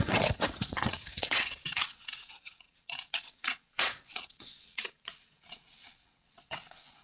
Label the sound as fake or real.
fake